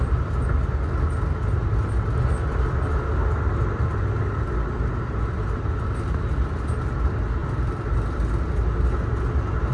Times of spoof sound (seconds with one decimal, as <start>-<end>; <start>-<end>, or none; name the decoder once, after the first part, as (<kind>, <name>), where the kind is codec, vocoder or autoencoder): none

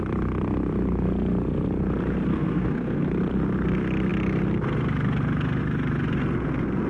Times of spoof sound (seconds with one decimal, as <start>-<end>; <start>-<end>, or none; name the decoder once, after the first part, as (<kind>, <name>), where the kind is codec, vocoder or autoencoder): 2.3-3.1 (codec, SNAC)

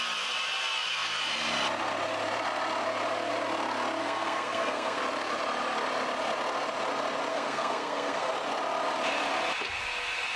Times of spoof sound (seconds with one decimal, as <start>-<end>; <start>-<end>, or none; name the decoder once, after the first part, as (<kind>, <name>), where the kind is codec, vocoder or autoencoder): 4.0-5.0 (codec, SNAC); 7.3-8.3

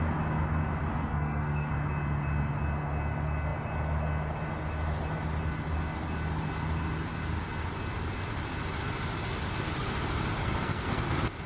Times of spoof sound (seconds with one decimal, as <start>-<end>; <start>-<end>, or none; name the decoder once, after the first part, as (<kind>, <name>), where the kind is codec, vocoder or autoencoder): 0.9-1.7 (codec, SNAC); 10.4-11.0

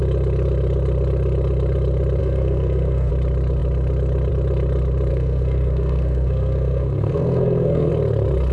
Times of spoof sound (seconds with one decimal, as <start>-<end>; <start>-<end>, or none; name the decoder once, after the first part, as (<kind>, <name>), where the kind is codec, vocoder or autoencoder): 2.2-3.1 (codec, SNAC); 5.1-7.9

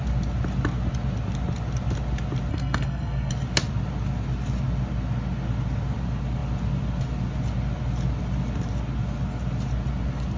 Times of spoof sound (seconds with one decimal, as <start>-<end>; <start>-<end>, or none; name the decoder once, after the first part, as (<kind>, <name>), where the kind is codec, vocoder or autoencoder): 2.5-3.3 (codec, SNAC)

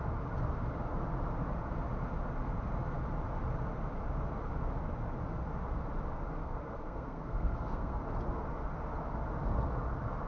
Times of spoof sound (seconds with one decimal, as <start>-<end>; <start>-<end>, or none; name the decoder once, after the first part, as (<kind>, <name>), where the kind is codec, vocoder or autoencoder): 6.4-8.0 (codec, SNAC)